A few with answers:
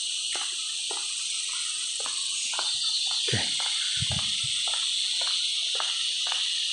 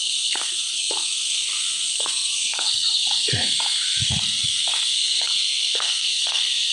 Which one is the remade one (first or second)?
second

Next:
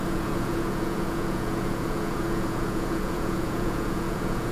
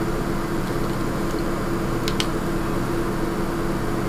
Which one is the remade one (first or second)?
first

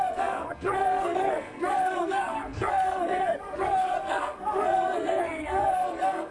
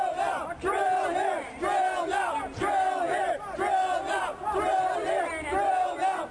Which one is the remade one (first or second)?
first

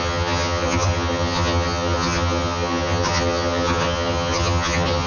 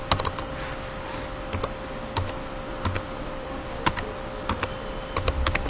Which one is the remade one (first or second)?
first